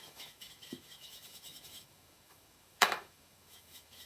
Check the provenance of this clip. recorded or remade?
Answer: remade